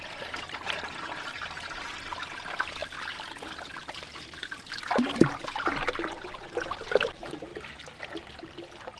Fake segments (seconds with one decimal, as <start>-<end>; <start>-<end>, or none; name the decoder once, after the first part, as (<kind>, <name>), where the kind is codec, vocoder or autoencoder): none